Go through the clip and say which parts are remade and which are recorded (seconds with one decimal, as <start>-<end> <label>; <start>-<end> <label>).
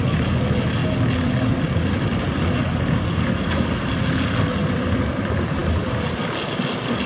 0.0-7.1 recorded